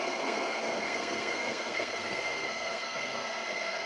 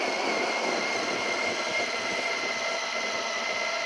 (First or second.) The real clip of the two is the second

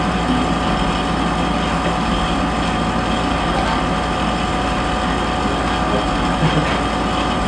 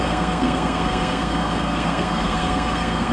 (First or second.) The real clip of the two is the first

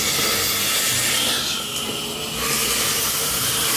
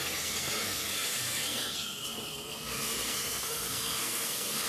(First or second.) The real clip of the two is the first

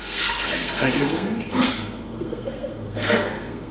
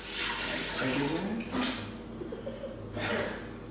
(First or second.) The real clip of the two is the second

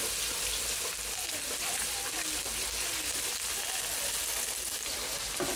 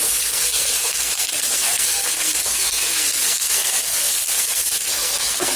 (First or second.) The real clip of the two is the first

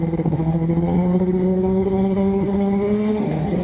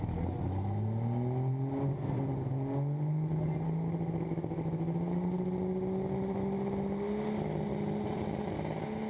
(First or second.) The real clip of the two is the second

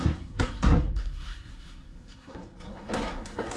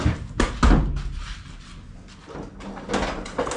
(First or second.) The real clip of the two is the second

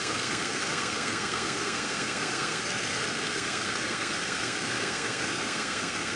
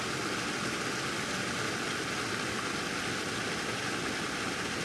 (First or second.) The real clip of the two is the second